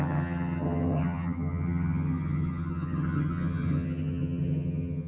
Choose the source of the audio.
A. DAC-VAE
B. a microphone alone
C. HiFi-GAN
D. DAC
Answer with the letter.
C